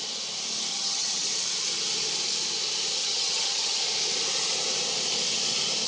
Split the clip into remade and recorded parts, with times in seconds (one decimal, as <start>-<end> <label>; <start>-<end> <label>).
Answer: 0.0-0.7 recorded; 0.7-1.3 remade; 1.3-3.0 recorded; 3.0-3.8 remade; 3.8-5.9 recorded